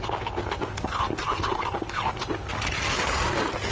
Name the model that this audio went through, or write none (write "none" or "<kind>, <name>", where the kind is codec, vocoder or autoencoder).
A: none